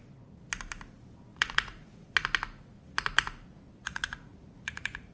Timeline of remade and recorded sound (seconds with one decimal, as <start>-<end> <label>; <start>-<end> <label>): 0.0-1.3 recorded; 1.3-2.1 remade; 2.1-3.8 recorded; 3.8-5.1 remade